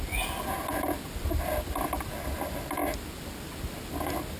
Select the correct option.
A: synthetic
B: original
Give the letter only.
B